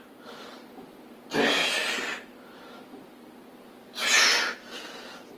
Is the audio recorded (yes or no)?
yes